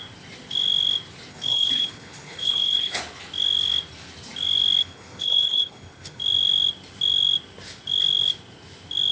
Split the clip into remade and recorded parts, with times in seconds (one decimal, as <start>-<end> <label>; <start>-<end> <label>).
0.0-1.3 recorded; 1.3-3.0 remade; 3.0-4.8 recorded; 4.8-6.2 remade; 6.2-9.1 recorded